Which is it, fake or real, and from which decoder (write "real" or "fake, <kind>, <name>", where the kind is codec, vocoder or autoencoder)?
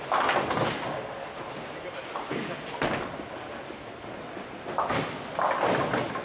real